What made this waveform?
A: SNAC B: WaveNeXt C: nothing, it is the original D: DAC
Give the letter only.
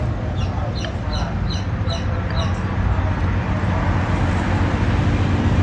C